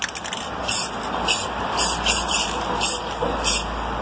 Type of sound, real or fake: real